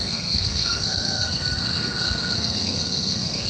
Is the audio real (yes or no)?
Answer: no